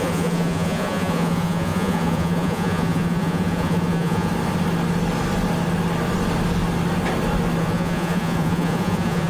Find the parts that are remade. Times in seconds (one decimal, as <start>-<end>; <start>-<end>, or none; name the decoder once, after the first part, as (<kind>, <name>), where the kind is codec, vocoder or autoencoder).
0.0-4.3 (vocoder, Vocos); 7.6-9.3